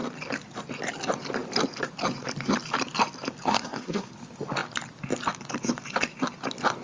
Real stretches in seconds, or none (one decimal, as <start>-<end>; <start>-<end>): 0.0-3.5; 4.1-6.8